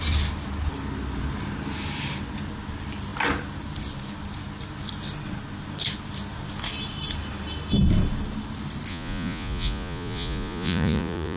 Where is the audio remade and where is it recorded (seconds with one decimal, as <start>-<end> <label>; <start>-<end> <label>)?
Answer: 0.0-8.9 recorded; 8.9-11.4 remade